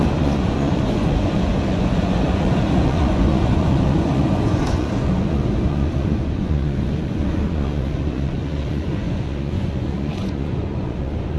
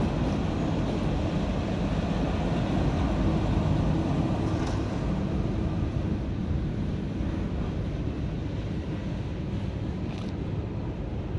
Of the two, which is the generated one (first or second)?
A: first